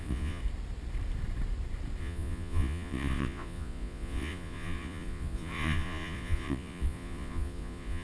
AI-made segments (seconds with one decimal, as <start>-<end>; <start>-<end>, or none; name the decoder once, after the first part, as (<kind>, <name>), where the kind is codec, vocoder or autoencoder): 0.0-0.4 (vocoder, Vocos); 2.0-8.0

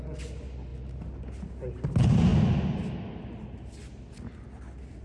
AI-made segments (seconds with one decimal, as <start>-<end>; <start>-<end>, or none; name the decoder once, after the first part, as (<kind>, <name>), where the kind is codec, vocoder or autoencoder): none

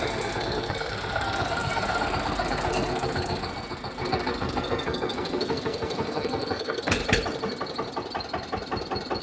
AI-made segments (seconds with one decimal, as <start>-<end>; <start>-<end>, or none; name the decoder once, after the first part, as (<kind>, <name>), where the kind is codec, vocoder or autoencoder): 0.0-7.0 (codec, SNAC)

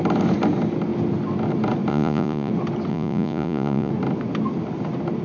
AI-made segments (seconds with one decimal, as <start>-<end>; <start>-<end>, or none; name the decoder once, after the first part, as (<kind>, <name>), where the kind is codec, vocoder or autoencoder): 1.9-2.5 (vocoder, Vocos); 2.9-3.9

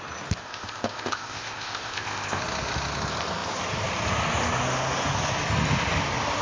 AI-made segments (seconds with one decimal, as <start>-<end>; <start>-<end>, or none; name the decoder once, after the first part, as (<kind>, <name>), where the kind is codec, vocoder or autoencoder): 0.4-2.4 (codec, ZipCodec)

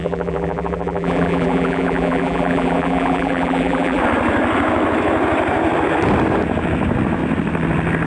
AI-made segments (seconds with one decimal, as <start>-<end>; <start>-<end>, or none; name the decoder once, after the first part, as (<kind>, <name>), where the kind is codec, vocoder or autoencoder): 0.0-4.0 (vocoder, BigVGAN v2)

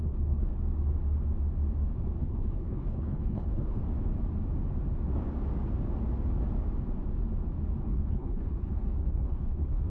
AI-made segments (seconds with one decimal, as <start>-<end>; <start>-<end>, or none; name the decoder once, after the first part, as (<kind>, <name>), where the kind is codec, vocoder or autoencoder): 0.0-0.5 (codec, HILCodec); 2.2-3.8; 7.8-9.9